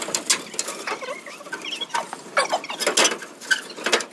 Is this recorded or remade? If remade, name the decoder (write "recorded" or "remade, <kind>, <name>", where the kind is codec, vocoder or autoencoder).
recorded